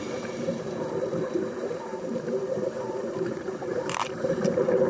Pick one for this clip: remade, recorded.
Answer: remade